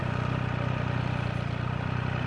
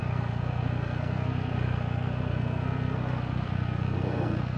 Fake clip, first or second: second